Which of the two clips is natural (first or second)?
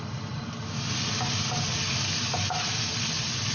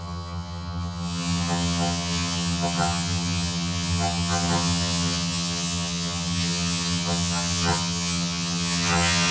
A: first